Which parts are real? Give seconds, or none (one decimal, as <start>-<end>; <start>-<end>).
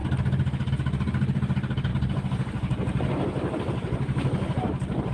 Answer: 0.0-5.1